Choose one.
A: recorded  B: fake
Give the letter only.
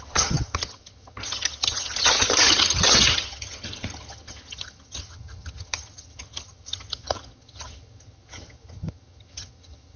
B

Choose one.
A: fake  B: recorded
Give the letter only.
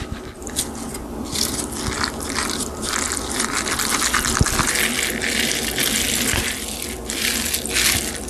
B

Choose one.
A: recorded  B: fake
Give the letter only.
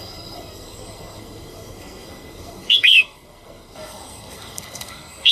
B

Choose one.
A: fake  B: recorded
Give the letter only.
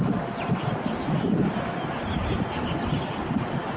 B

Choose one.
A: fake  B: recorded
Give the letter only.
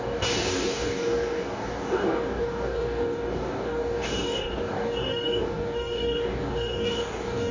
A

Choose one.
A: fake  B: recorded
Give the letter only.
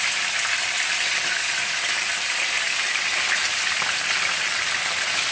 B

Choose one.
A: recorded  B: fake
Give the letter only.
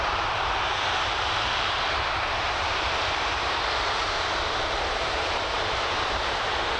B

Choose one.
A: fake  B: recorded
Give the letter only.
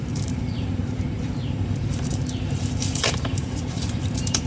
A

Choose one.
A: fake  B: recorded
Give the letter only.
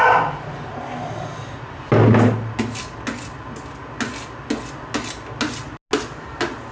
B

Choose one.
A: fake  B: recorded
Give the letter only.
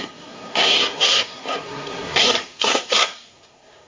A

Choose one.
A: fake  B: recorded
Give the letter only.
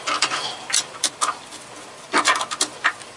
B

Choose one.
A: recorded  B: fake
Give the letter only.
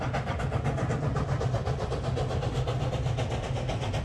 A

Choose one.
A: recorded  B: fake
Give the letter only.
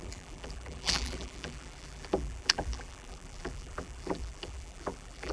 B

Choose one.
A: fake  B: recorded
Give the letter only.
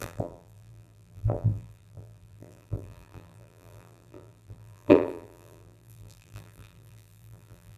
A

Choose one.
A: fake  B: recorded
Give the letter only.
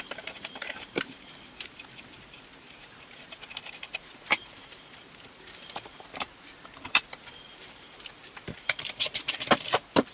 A